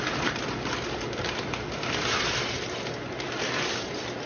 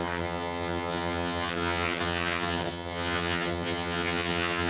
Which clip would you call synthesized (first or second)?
second